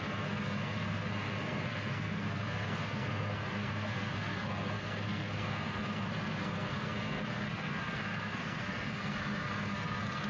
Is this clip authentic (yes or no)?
no